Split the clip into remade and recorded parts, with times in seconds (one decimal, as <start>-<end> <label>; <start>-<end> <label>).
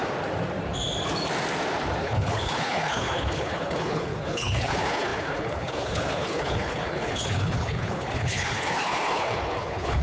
0.0-2.0 recorded; 2.0-10.0 remade